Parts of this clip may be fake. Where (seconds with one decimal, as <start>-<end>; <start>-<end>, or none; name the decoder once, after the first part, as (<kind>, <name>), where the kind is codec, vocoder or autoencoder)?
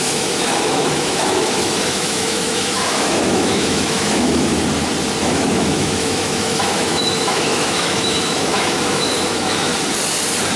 0.0-4.5 (autoencoder, DAC-VAE); 5.2-9.7